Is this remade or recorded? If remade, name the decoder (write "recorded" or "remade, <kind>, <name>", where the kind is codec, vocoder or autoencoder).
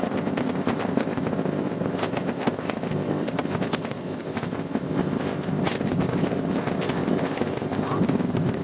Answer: remade, codec, ZipCodec